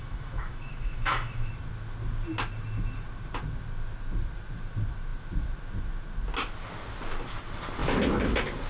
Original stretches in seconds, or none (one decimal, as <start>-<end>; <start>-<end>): 1.5-8.7